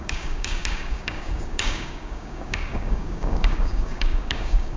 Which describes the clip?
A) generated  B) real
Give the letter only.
A